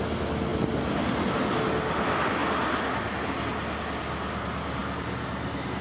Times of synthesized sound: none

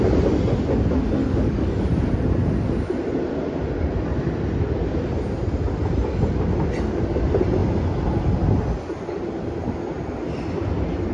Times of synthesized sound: 1.2-1.8 (codec, DAC)

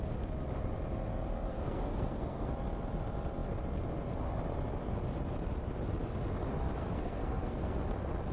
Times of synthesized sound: 1.5-2.5 (codec, SNAC); 6.8-7.8